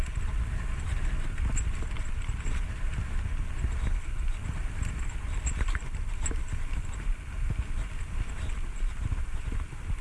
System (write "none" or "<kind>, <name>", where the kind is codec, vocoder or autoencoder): none